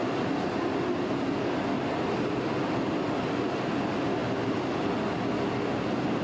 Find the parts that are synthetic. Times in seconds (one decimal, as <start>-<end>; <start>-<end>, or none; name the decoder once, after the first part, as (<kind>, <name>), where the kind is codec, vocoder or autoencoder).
0.0-3.7 (vocoder, BigVGAN v2); 4.2-5.3